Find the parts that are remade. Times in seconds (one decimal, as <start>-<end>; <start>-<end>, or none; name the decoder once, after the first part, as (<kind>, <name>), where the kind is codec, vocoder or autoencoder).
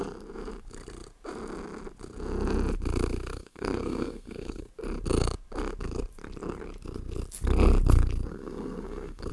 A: 3.3-4.7 (codec, SNAC); 8.3-9.3